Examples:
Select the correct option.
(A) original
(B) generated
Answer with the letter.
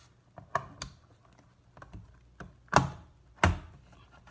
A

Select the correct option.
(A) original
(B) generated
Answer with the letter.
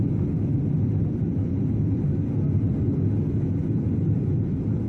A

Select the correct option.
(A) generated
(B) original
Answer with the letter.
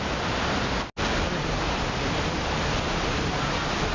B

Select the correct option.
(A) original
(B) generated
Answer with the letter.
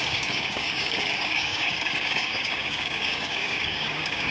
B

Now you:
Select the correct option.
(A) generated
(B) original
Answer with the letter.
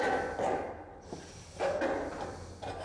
B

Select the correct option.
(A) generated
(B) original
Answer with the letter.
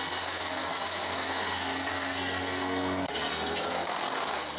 A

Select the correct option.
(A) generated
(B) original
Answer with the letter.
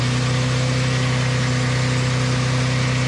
B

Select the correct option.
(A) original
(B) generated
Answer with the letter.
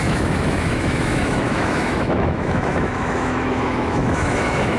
B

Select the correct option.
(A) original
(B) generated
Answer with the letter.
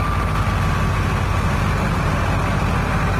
A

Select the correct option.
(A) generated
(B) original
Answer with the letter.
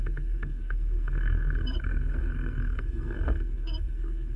A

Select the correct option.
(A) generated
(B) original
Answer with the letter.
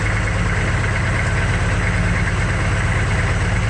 B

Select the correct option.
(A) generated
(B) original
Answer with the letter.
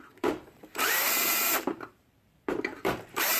A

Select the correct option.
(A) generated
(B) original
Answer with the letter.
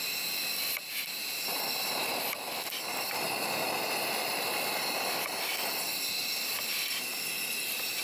B